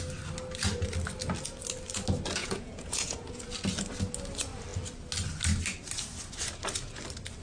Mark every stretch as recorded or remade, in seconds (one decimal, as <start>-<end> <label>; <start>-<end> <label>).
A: 0.0-2.4 recorded; 2.4-3.4 remade; 3.4-7.4 recorded